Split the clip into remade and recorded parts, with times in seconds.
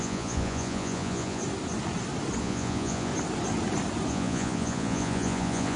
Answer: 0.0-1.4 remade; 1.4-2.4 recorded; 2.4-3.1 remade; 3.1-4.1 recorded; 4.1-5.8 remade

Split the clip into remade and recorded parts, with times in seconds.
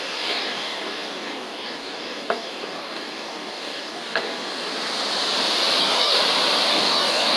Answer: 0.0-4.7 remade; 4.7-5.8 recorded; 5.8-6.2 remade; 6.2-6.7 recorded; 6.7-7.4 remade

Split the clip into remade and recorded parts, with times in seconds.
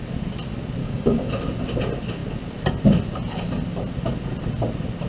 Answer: 0.0-0.8 recorded; 0.8-1.3 remade; 1.3-5.1 recorded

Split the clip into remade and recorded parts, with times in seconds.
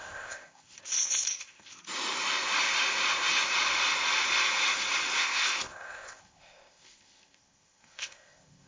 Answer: 0.0-1.8 remade; 1.8-5.2 recorded; 5.2-8.7 remade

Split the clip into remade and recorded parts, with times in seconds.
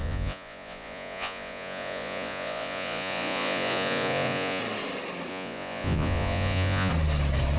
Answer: 0.0-4.6 remade; 4.6-5.3 recorded; 5.3-6.9 remade; 6.9-7.6 recorded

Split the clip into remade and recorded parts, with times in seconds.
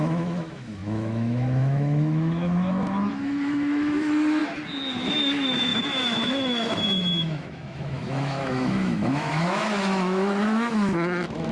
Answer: 0.0-4.4 remade; 4.4-5.1 recorded; 5.1-11.5 remade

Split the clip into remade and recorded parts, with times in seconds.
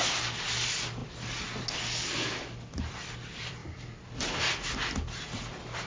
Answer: 0.0-1.0 remade; 1.0-2.7 recorded; 2.7-5.9 remade